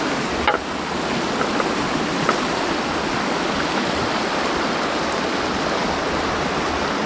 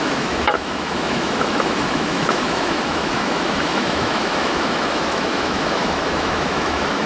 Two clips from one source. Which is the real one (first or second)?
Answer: first